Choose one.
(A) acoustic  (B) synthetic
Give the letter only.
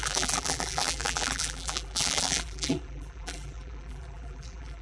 B